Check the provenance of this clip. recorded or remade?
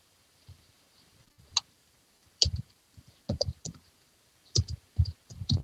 remade